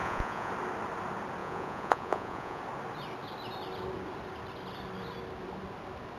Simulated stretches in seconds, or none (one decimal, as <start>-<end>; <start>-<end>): 0.0-0.5; 1.4-2.6

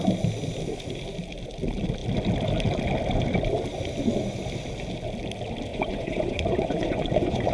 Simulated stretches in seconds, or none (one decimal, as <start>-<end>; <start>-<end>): 5.7-7.5

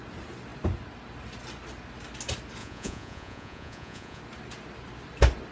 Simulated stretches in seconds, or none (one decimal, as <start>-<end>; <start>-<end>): 2.6-4.2

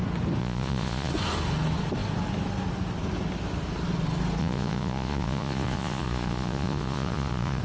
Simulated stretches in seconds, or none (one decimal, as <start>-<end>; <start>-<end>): 0.4-1.1; 4.4-7.6

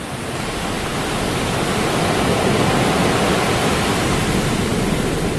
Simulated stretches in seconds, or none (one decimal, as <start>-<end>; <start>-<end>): none